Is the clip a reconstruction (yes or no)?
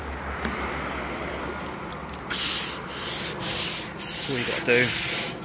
no